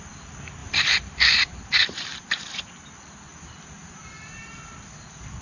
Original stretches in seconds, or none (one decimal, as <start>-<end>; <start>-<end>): 0.0-0.6; 2.4-5.4